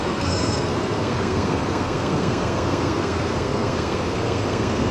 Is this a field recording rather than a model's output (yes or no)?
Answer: no